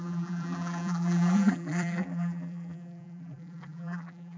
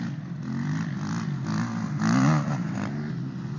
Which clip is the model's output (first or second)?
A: first